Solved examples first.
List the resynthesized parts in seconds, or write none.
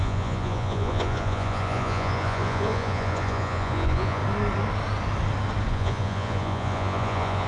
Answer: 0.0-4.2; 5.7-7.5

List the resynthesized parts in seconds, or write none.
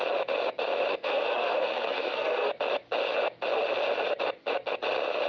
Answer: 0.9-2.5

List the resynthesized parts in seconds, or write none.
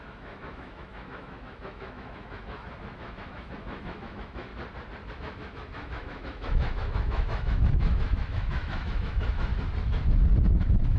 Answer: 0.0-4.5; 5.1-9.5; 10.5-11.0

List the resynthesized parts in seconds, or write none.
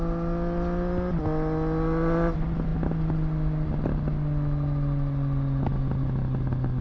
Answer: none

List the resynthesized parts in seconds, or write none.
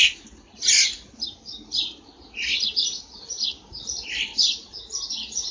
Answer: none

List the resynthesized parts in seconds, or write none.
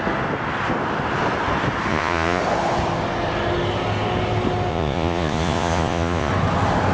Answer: 1.9-2.4; 4.7-6.3